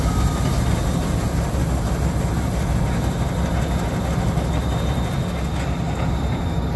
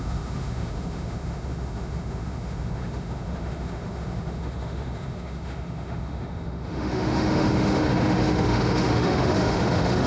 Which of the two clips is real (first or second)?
first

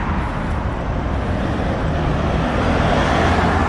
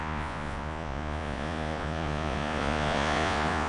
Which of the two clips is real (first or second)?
first